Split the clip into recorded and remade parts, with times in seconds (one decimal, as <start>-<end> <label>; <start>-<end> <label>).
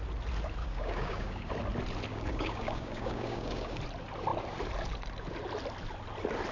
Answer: 0.0-0.6 recorded; 0.6-1.5 remade; 1.5-2.1 recorded; 2.1-3.8 remade; 3.8-6.5 recorded